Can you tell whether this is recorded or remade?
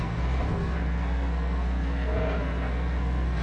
remade